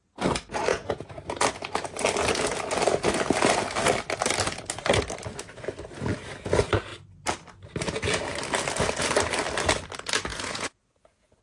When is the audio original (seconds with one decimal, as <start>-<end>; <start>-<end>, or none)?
0.0-0.7; 1.2-10.3